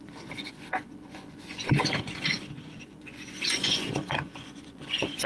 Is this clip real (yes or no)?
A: no